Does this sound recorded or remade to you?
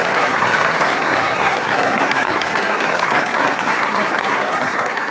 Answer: remade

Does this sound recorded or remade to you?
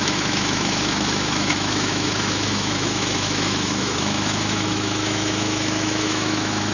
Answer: remade